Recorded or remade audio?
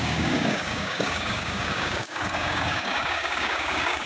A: remade